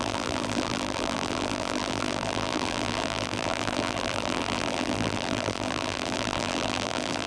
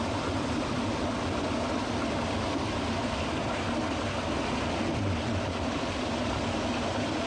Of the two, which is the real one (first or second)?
second